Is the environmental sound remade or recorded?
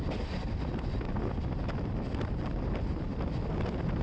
recorded